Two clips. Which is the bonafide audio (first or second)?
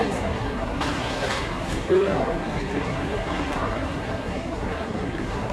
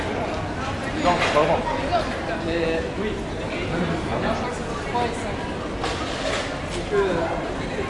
second